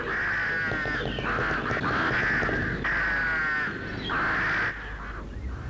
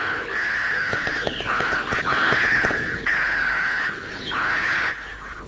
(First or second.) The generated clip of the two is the second